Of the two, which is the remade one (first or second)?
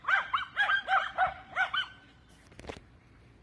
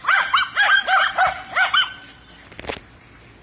first